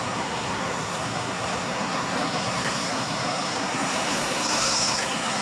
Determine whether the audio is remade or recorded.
remade